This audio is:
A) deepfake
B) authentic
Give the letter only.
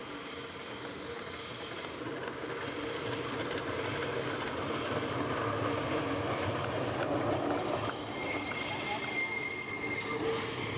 B